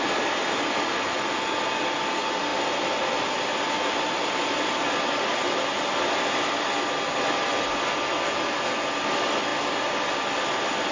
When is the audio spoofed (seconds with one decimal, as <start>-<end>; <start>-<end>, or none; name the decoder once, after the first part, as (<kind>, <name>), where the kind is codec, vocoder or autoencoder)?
none